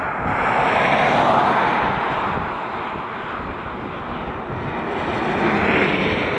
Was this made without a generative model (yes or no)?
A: yes